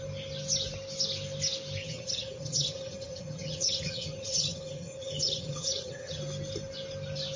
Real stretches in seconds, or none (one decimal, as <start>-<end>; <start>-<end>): 0.0-1.8; 6.2-7.4